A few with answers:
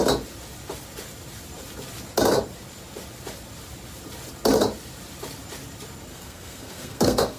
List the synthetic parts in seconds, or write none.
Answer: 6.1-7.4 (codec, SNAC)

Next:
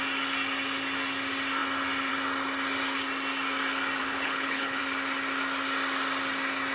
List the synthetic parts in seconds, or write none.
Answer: 4.0-4.8 (codec, HILCodec)

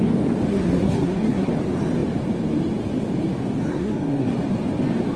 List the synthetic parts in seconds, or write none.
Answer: 0.5-1.5 (codec, SNAC); 3.7-4.3

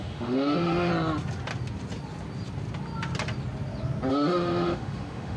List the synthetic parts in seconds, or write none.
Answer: 0.0-0.9 (autoencoder, DAC-VAE); 4.1-5.4

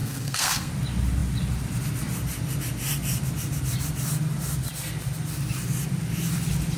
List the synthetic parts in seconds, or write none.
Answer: 0.0-0.7 (codec, SNAC)